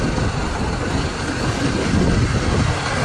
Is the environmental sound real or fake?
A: real